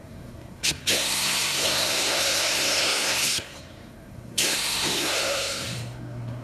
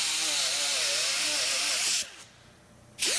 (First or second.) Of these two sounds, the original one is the second